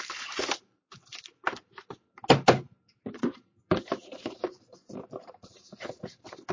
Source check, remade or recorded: remade